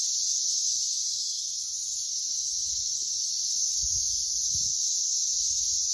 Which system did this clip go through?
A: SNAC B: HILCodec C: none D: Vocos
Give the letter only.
C